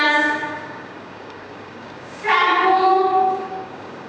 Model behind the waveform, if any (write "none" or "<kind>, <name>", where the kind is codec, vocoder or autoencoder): codec, DAC